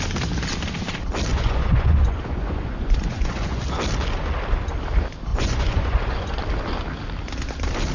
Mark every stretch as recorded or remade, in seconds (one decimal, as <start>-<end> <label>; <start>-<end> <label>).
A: 0.0-1.3 recorded; 1.3-3.6 remade; 3.6-5.3 recorded; 5.3-6.4 remade; 6.4-7.9 recorded